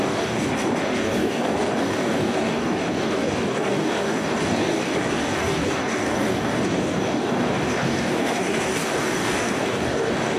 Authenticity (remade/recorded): remade